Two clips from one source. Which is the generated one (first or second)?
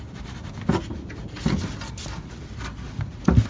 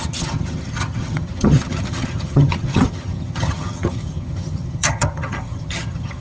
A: second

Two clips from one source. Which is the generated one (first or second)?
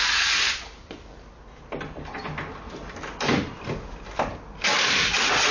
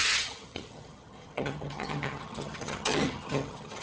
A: second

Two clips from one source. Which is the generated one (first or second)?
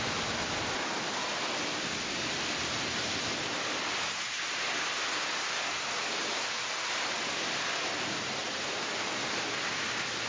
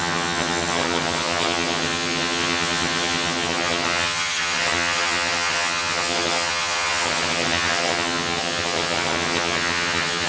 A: second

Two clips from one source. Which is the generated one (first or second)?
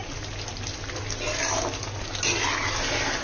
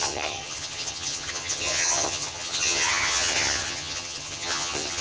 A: second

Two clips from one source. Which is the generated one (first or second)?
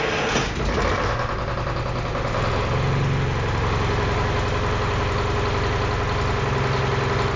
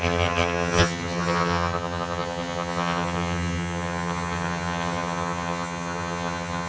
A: second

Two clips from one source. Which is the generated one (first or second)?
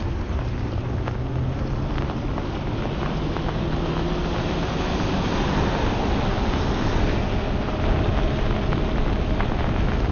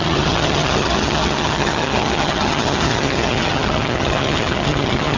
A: second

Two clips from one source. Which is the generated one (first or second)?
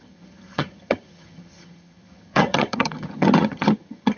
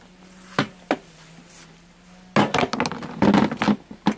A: first